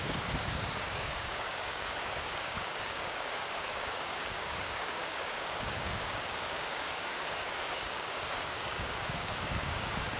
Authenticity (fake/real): fake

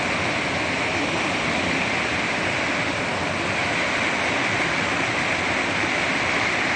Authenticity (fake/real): real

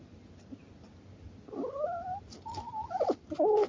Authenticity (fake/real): real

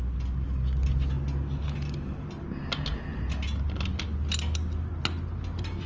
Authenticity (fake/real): real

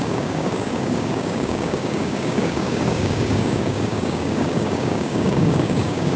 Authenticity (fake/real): fake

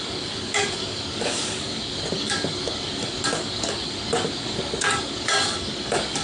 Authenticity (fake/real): fake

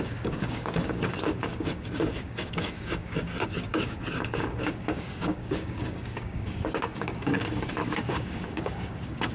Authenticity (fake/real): fake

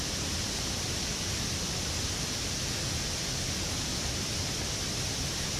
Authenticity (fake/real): real